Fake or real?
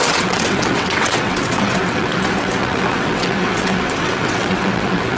fake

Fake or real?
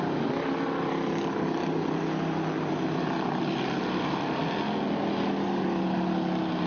real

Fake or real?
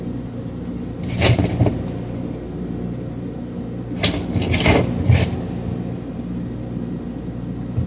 real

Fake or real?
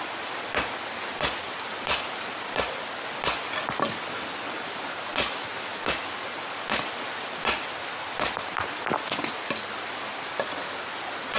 real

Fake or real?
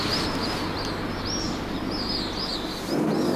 real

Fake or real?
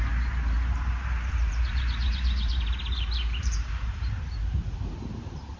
fake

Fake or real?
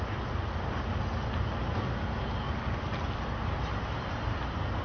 real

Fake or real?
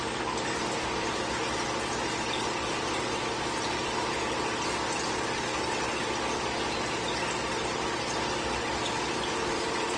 real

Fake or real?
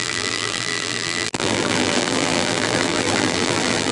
fake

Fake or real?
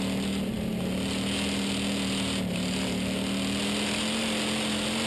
real